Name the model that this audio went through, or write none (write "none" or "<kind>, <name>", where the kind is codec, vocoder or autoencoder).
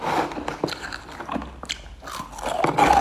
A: none